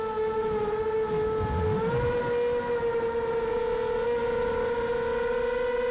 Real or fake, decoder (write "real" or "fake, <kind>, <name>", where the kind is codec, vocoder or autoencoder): real